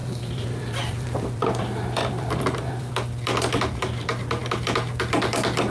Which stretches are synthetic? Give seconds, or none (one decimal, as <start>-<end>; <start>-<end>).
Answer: 0.0-2.9